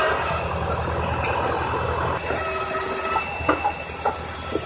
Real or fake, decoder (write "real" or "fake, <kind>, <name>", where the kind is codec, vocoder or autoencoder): real